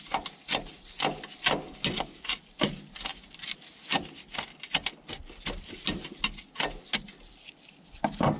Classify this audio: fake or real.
real